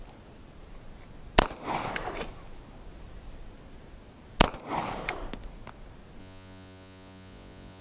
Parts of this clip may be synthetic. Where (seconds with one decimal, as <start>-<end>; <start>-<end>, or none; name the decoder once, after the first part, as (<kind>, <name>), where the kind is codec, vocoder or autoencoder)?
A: 6.2-7.8 (vocoder, Vocos)